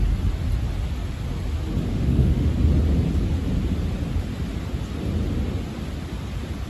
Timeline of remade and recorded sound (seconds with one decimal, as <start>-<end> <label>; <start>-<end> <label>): 0.0-1.9 recorded; 1.9-2.5 remade; 2.5-6.7 recorded